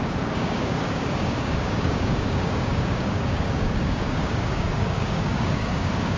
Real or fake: fake